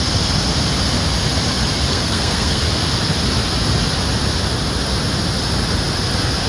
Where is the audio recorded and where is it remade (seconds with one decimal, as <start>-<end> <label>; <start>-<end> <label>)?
0.0-1.9 recorded; 1.9-2.6 remade; 2.6-6.5 recorded